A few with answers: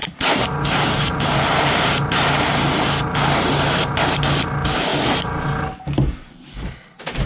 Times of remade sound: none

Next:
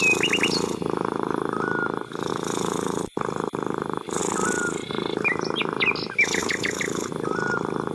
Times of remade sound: none